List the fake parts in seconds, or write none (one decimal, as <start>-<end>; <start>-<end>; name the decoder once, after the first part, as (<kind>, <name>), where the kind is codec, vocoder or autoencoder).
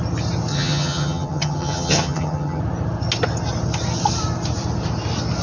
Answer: 0.5-2.6 (vocoder, HiFi-GAN)